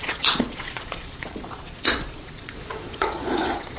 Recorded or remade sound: remade